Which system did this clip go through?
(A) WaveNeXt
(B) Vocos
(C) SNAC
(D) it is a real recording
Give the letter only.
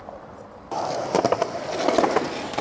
D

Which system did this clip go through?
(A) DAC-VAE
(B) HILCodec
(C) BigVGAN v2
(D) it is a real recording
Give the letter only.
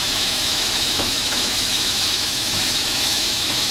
A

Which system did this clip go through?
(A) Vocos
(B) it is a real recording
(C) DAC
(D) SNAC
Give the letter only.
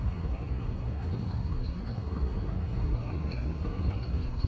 D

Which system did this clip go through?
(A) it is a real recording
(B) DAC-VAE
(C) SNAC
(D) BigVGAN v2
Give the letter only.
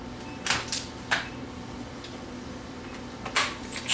A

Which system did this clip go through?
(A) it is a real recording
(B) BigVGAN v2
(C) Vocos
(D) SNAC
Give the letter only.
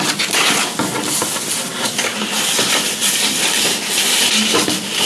A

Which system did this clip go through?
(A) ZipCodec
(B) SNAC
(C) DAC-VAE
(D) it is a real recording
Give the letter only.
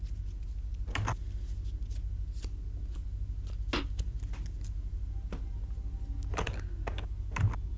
D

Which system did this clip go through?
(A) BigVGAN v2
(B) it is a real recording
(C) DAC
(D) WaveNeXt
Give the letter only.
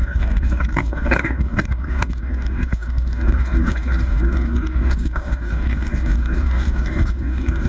C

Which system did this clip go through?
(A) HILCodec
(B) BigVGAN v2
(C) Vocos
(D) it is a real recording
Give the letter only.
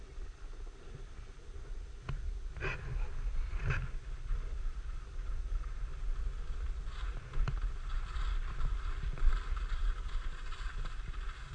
D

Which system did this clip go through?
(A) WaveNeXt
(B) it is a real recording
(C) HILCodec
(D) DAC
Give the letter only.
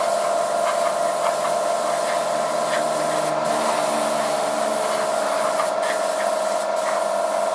B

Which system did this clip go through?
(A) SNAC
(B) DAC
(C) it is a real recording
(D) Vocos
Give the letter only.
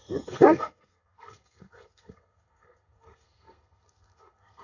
A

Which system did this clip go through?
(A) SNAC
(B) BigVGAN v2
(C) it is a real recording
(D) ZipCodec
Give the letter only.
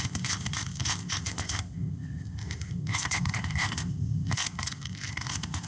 D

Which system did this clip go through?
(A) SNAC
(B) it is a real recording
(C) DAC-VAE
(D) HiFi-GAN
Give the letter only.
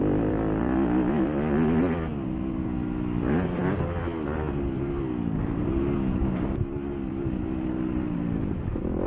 B